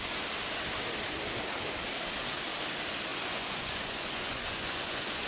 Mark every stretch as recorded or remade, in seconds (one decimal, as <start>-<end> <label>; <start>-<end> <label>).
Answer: 0.0-3.1 recorded; 3.1-5.3 remade

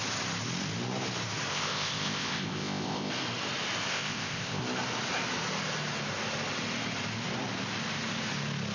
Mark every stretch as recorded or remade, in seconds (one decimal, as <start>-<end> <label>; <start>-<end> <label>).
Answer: 0.0-1.5 recorded; 1.5-3.1 remade; 3.1-3.9 recorded; 3.9-4.6 remade; 4.6-8.7 recorded

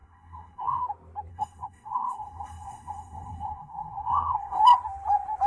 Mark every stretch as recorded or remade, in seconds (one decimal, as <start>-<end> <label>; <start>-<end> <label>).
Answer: 0.0-0.8 remade; 0.8-1.3 recorded; 1.3-4.6 remade; 4.6-5.5 recorded